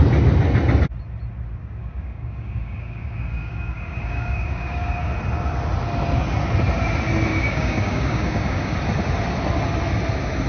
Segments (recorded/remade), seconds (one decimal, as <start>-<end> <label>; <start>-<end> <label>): 0.0-1.6 recorded; 1.6-5.0 remade; 5.0-7.3 recorded; 7.3-8.8 remade; 8.8-10.5 recorded